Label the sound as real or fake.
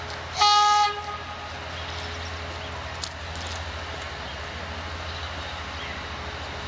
real